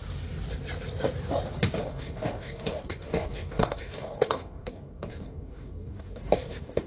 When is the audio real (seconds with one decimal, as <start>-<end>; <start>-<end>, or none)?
0.0-1.8

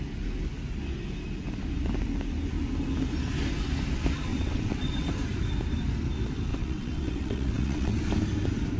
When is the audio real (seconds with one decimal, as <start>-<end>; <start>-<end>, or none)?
0.0-4.3; 5.1-6.5; 8.0-8.8

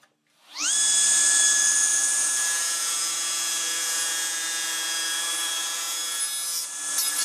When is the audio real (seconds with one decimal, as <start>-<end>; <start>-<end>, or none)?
0.0-1.9; 6.2-7.2